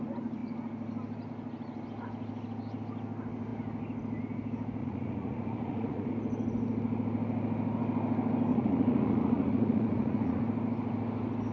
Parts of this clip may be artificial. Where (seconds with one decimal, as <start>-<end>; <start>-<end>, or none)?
4.8-6.1; 8.5-10.4